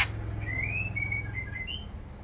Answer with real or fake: real